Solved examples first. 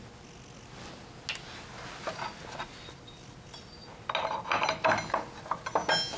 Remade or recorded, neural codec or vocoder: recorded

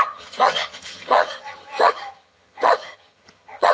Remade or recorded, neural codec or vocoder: remade, vocoder, HiFi-GAN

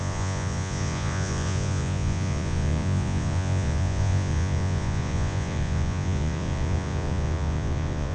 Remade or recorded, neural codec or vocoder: remade, vocoder, Vocos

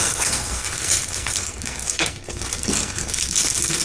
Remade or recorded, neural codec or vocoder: remade, codec, SNAC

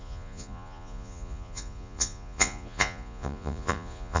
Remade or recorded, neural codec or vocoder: remade, vocoder, Vocos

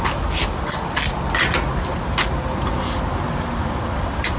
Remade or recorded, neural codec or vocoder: recorded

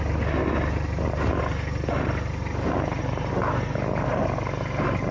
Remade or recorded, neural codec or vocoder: recorded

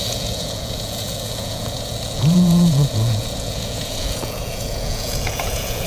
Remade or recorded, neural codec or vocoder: remade, vocoder, Vocos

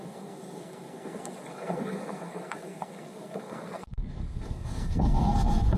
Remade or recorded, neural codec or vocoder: remade, codec, SNAC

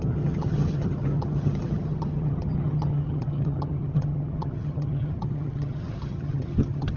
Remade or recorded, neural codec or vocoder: remade, vocoder, HiFi-GAN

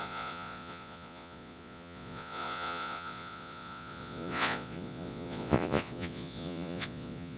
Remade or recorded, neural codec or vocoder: remade, vocoder, Vocos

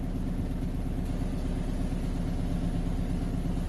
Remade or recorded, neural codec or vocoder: recorded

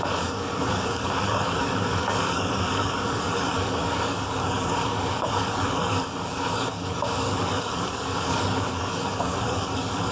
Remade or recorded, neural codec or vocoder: remade, codec, DAC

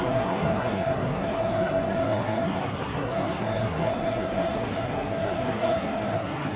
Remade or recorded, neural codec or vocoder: remade, codec, SNAC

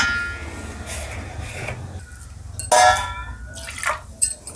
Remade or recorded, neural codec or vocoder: recorded